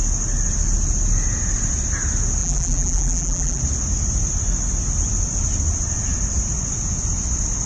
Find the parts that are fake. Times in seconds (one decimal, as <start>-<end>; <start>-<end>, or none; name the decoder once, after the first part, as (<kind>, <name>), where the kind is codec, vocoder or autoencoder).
2.4-3.6 (vocoder, BigVGAN v2)